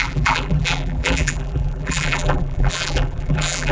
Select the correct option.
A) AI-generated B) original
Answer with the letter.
A